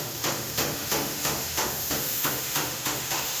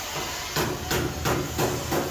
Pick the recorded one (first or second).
second